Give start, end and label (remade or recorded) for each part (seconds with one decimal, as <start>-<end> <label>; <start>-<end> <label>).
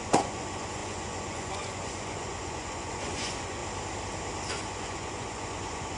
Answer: 0.0-3.6 remade; 3.6-4.5 recorded; 4.5-6.0 remade